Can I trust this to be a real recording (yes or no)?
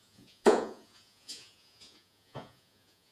no